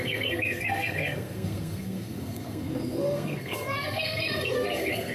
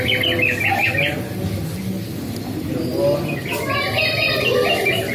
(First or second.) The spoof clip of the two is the first